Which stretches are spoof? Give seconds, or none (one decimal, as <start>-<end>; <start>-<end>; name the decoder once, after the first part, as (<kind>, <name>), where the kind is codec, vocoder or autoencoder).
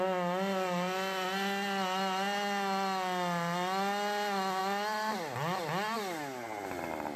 none